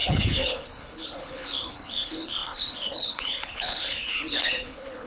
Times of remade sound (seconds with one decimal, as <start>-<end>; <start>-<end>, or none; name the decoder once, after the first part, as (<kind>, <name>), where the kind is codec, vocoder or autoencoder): 0.0-5.1 (codec, HILCodec)